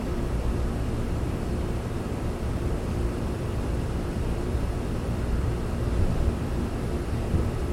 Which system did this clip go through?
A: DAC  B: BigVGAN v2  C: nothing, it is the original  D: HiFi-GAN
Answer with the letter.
B